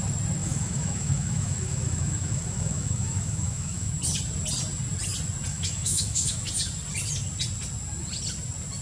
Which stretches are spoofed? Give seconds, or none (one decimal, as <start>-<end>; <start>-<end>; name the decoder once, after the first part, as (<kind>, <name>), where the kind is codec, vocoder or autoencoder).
0.4-3.9 (autoencoder, DAC-VAE); 5.5-6.5